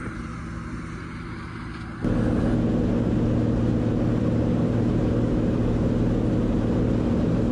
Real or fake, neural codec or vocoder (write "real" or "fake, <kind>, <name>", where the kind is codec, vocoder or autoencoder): real